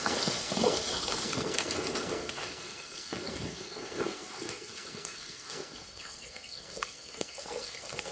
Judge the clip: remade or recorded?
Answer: remade